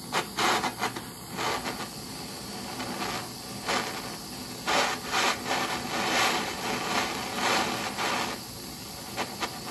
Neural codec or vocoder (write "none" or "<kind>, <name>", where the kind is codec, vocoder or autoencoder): none